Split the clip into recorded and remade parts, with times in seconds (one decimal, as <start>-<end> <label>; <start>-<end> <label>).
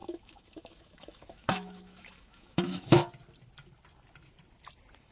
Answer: 0.0-3.1 remade; 3.1-5.1 recorded